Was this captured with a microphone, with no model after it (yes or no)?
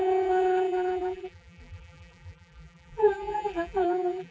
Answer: no